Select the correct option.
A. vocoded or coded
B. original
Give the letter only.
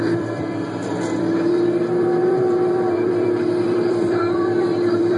A